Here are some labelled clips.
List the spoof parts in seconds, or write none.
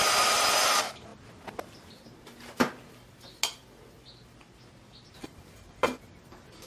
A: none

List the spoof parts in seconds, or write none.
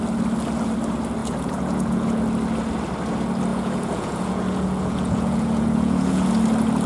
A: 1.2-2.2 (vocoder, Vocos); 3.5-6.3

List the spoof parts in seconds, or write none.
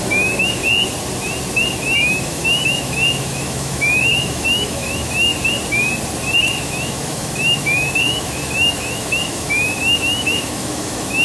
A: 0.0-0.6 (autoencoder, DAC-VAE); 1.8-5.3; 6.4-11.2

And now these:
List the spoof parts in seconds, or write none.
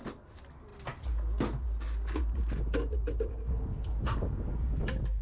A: 4.5-5.2 (vocoder, BigVGAN v2)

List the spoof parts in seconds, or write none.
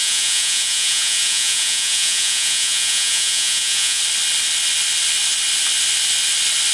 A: 0.0-4.0 (vocoder, Vocos)